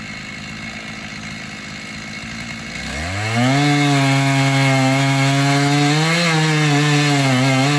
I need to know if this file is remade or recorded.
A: recorded